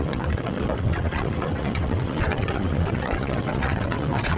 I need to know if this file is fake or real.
fake